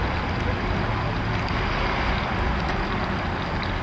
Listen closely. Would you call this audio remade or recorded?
recorded